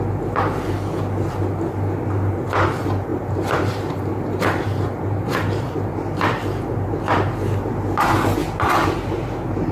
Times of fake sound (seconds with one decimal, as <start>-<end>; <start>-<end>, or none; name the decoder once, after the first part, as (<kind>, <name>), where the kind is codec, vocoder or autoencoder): 3.1-5.9 (vocoder, BigVGAN v2)